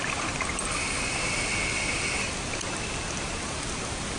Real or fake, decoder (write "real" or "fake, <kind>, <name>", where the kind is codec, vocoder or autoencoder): real